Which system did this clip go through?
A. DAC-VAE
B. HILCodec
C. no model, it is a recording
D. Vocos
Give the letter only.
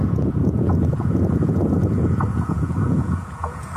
D